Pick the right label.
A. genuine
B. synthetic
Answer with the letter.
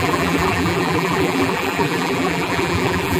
B